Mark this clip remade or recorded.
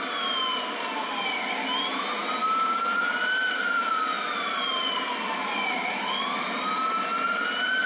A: recorded